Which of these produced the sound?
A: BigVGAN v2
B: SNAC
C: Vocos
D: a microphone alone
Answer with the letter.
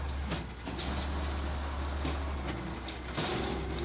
D